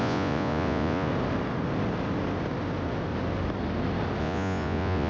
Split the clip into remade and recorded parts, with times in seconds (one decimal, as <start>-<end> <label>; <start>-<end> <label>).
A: 0.0-1.1 remade; 1.1-4.2 recorded; 4.2-5.1 remade